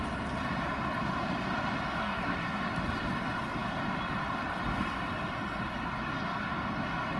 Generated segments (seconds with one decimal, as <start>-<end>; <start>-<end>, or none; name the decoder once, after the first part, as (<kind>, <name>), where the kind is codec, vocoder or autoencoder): 2.0-2.6 (codec, SNAC)